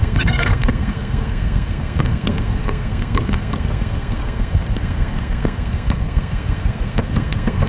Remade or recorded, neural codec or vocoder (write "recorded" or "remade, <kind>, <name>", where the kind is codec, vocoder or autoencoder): remade, codec, SNAC